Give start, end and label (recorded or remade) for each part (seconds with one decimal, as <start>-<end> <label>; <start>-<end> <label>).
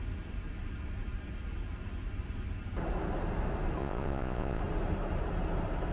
0.0-3.8 recorded; 3.8-4.6 remade; 4.6-5.9 recorded